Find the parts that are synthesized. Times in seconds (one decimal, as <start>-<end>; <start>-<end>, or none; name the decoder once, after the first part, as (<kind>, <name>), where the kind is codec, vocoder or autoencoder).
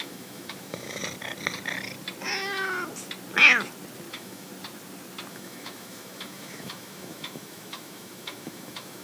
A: 0.0-1.0 (autoencoder, DAC-VAE); 4.1-4.5; 5.3-9.0